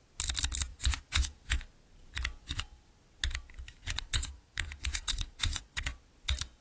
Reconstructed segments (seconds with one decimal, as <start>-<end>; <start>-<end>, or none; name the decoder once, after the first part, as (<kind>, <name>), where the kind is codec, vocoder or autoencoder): 0.7-1.6 (vocoder, Vocos); 3.8-5.8

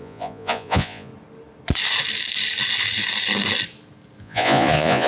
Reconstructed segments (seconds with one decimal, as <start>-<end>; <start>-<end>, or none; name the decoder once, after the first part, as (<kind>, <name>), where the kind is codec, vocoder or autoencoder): 0.0-1.1 (vocoder, Vocos); 4.2-5.1